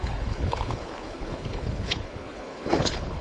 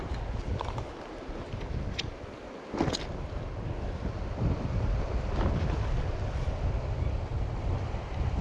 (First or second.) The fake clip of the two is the first